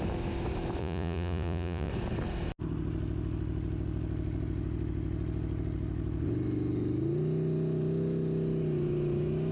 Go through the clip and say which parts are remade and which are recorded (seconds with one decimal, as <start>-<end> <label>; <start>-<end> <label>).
0.0-0.8 recorded; 0.8-1.9 remade; 1.9-9.5 recorded